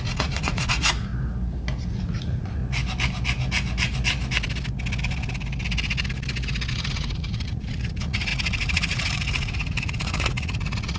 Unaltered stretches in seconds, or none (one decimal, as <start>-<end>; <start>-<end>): 1.1-1.9; 2.6-6.7